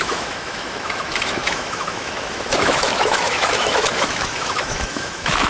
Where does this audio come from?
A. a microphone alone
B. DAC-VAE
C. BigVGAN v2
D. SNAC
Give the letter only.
B